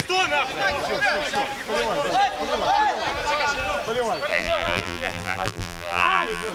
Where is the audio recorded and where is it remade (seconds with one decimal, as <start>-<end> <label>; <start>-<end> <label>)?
0.0-4.3 recorded; 4.3-6.5 remade